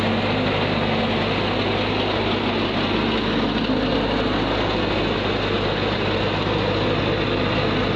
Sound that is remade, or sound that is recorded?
recorded